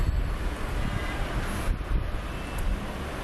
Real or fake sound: real